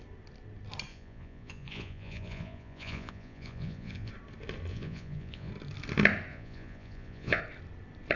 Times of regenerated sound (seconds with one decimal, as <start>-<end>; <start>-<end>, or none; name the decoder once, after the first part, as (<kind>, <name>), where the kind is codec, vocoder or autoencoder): 0.9-4.1 (vocoder, Vocos); 4.7-5.5; 6.3-7.4